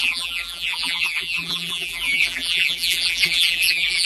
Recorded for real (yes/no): no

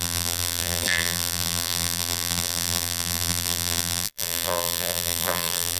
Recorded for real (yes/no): no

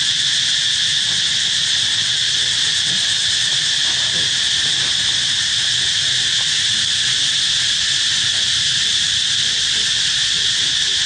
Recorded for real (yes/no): yes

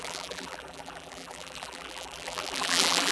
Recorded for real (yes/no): no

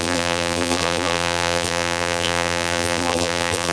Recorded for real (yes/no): no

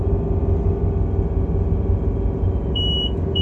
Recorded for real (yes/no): yes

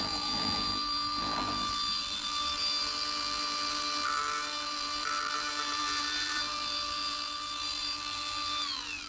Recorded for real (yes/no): no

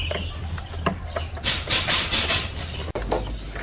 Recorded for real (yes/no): yes